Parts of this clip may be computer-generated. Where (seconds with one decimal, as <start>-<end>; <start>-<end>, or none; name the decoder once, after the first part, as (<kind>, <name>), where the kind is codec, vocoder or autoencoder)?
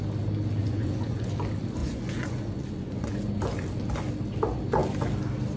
0.6-1.3 (vocoder, Vocos); 1.8-3.3